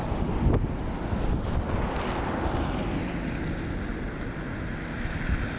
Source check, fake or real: real